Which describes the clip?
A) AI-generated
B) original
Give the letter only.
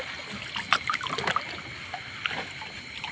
B